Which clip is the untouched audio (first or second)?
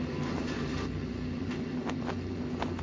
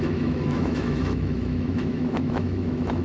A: first